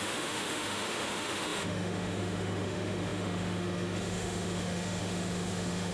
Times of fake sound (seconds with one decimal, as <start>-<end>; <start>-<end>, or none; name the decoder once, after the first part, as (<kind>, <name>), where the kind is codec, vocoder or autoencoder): 0.0-5.9 (autoencoder, DAC-VAE)